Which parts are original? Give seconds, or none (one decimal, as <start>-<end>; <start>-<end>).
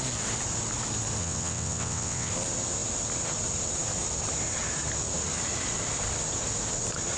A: 0.0-1.2; 2.3-7.2